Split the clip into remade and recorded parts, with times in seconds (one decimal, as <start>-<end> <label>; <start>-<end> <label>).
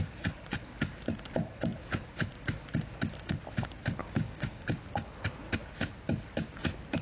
0.0-4.0 recorded; 4.0-4.6 remade; 4.6-7.0 recorded